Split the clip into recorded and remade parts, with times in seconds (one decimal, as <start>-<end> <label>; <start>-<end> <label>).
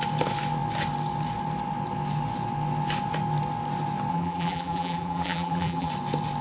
0.0-4.1 recorded; 4.1-5.9 remade; 5.9-6.4 recorded